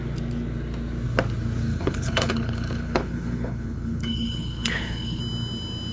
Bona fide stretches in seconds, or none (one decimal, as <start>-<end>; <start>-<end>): 0.0-1.7; 5.2-5.9